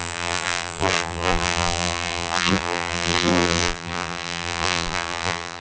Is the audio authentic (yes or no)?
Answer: no